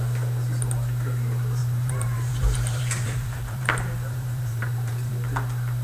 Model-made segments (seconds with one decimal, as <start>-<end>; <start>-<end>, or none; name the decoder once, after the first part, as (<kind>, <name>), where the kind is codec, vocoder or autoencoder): 1.6-5.1 (vocoder, BigVGAN v2)